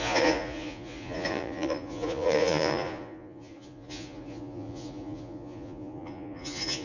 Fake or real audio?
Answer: fake